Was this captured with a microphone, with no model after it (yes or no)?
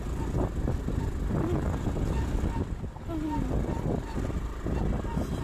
yes